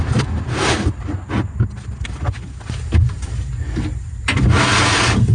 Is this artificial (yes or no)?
no